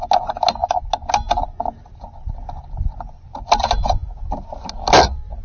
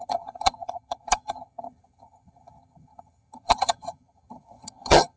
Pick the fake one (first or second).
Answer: second